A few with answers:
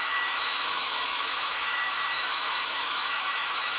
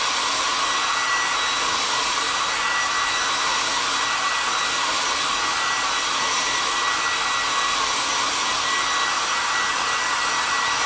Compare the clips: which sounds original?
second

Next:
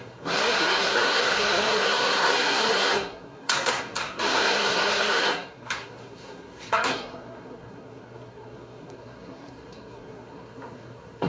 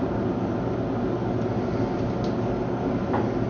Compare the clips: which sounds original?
second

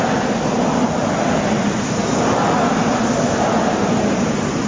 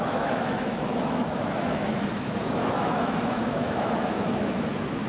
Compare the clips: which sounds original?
first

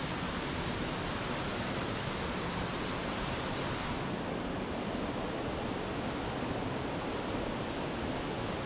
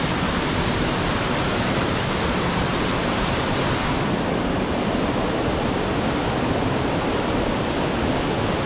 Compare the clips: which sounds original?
first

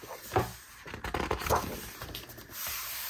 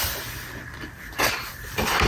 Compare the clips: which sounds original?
first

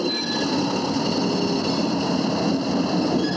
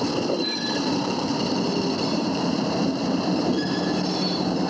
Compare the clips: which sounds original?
first